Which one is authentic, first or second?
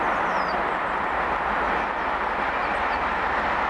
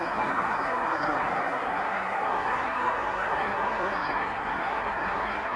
first